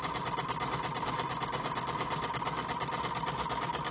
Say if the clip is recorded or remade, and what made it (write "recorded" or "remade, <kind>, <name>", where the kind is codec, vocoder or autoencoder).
recorded